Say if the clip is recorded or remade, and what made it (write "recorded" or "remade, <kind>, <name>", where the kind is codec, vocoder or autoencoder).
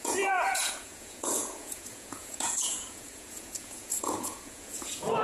remade, vocoder, Vocos